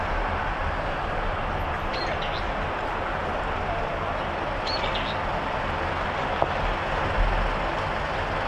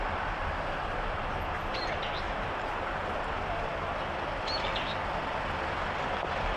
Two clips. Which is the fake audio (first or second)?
second